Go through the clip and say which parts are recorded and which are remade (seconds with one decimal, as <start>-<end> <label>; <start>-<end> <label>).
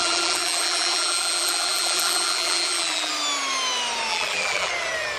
0.0-3.1 remade; 3.1-4.1 recorded; 4.1-4.7 remade; 4.7-5.2 recorded